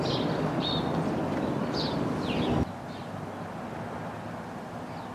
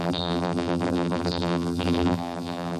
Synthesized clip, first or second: second